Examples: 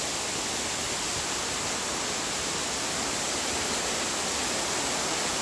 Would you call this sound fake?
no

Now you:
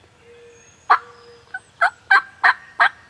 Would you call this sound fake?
no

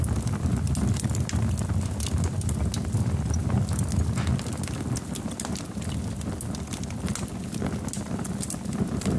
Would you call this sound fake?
no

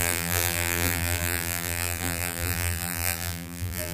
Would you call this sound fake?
yes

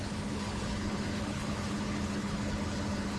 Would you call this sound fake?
yes